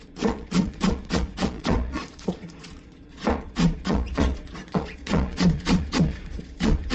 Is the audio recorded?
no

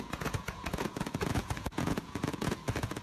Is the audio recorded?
no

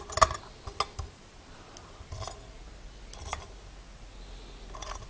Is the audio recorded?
yes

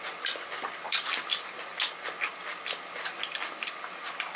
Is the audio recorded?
yes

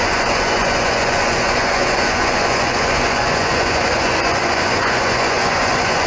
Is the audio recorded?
no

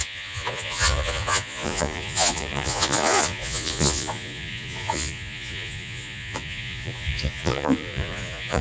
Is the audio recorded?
no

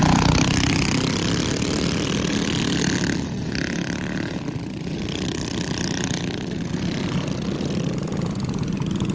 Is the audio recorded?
yes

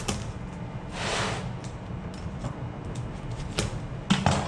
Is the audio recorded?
yes